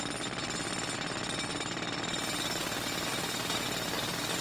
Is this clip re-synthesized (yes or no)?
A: no